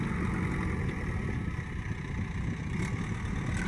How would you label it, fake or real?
real